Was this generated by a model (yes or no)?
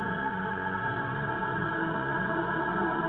yes